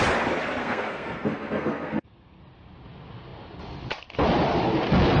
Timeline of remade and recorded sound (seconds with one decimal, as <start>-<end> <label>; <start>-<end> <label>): 0.0-0.6 recorded; 0.6-2.4 remade; 2.4-5.2 recorded